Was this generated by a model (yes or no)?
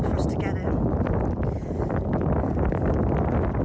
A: no